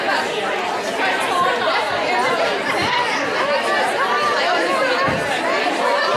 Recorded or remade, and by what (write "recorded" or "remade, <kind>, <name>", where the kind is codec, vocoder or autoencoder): recorded